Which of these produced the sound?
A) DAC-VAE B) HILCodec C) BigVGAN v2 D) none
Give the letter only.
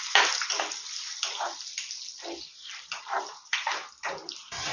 C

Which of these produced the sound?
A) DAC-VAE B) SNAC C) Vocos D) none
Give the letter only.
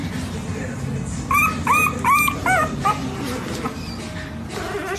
D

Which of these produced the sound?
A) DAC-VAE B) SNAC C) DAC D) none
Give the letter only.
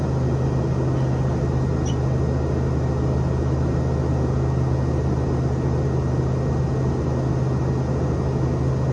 D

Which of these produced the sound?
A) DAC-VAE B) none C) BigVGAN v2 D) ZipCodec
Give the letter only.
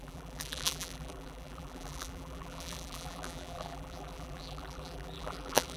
C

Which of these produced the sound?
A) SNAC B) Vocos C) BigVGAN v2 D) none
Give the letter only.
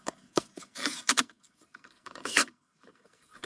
A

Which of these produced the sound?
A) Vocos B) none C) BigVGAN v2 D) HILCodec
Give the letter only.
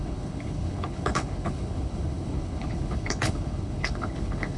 D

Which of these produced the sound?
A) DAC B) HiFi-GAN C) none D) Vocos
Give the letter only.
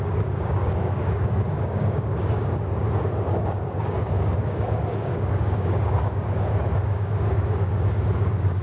A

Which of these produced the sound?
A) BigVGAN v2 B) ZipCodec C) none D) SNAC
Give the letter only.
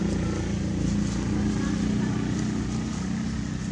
C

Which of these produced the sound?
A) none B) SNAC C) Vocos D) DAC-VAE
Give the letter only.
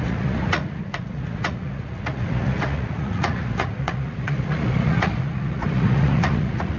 C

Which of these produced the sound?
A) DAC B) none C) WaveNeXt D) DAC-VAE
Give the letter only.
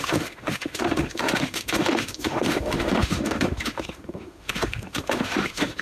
D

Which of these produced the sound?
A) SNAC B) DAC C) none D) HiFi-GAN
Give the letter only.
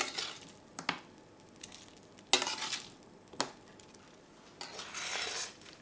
C